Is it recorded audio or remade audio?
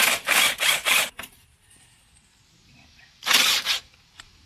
remade